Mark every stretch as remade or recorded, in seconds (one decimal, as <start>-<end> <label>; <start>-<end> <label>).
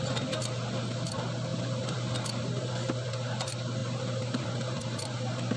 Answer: 0.0-1.5 recorded; 1.5-2.9 remade; 2.9-3.8 recorded; 3.8-5.1 remade; 5.1-5.6 recorded